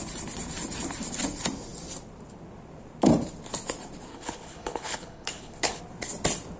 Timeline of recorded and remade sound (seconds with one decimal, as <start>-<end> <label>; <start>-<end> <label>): 0.0-4.1 recorded; 4.1-5.8 remade; 5.8-6.6 recorded